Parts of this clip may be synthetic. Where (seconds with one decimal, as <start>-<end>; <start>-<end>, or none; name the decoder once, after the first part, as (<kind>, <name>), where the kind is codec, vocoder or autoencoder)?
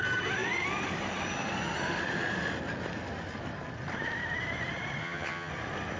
5.0-5.5 (vocoder, HiFi-GAN)